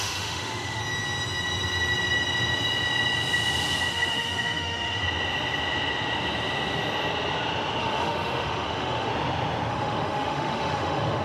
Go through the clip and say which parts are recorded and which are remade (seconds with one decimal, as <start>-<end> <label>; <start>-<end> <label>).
0.0-0.8 remade; 0.8-3.9 recorded; 3.9-5.0 remade; 5.0-7.8 recorded; 7.8-9.1 remade; 9.1-9.7 recorded; 9.7-11.2 remade